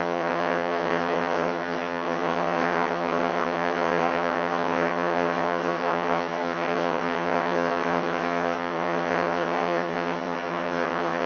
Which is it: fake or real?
fake